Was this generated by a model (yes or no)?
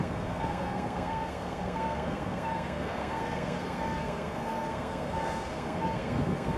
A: yes